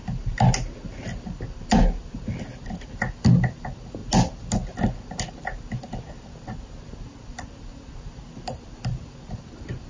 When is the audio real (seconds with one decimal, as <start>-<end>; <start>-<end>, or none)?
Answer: 0.0-9.9